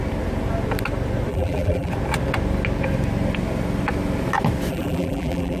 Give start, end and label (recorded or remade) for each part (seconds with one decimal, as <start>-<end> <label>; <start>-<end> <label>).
0.0-1.3 recorded; 1.3-1.9 remade; 1.9-4.7 recorded; 4.7-5.6 remade